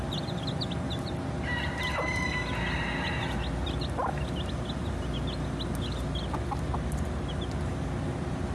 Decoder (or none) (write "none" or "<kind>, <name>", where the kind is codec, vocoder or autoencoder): none